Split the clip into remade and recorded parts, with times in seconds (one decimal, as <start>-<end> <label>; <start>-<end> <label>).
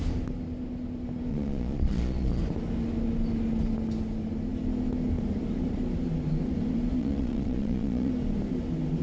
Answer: 0.0-1.3 recorded; 1.3-2.4 remade; 2.4-7.0 recorded; 7.0-8.1 remade; 8.1-9.0 recorded